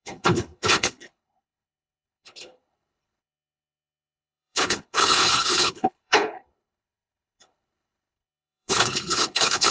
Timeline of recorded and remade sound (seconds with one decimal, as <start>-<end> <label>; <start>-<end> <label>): 0.0-9.7 remade